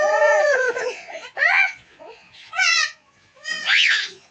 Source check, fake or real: fake